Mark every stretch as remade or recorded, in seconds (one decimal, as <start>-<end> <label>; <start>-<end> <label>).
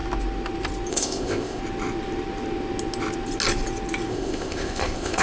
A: 0.0-0.9 recorded; 0.9-1.6 remade; 1.6-4.1 recorded; 4.1-5.2 remade